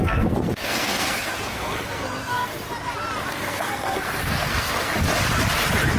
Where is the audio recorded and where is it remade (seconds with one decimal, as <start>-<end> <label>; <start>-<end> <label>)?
0.0-2.5 remade; 2.5-3.3 recorded; 3.3-4.9 remade; 4.9-6.0 recorded